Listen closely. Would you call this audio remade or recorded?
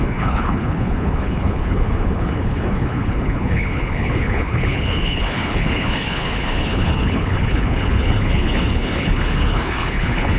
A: remade